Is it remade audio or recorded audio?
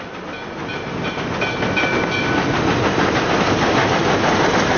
recorded